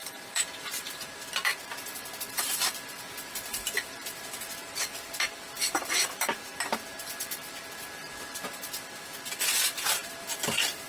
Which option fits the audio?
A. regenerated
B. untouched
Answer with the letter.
A